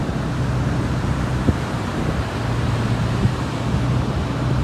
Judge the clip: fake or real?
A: fake